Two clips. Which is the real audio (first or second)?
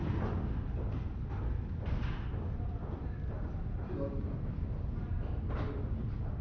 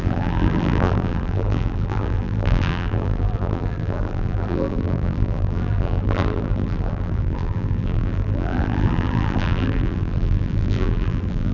first